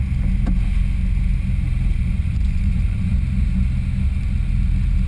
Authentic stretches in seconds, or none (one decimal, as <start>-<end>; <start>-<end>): 0.0-1.9; 3.1-5.1